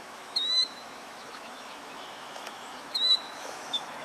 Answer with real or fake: fake